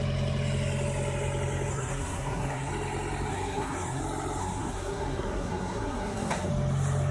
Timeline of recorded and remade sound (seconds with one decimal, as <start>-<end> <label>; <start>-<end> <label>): 0.0-1.7 recorded; 1.7-2.7 remade; 2.7-3.3 recorded; 3.3-4.0 remade; 4.0-4.4 recorded; 4.4-6.5 remade; 6.5-7.1 recorded